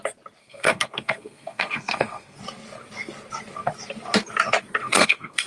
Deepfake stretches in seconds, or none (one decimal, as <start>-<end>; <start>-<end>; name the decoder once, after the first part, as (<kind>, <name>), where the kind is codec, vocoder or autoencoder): 0.4-2.4 (codec, SNAC); 4.8-5.5